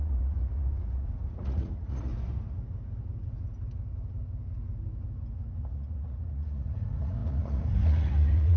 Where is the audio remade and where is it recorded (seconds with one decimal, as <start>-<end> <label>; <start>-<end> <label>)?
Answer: 0.0-2.1 remade; 2.1-5.6 recorded; 5.6-8.6 remade